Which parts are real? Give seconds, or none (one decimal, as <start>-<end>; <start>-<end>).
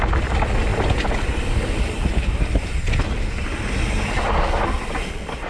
0.0-0.7; 1.3-5.5